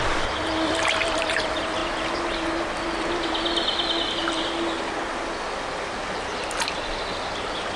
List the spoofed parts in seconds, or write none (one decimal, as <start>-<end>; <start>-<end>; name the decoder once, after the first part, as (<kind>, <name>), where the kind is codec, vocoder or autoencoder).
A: none